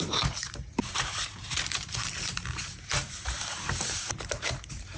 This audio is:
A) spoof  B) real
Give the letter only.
A